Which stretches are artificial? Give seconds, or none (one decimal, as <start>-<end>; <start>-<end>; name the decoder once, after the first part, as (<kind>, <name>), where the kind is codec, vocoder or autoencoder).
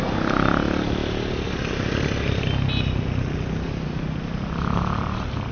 none